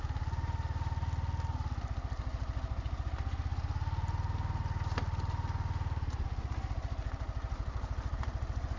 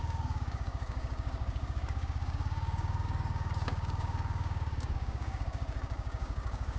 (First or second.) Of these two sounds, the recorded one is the first